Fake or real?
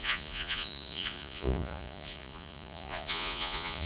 fake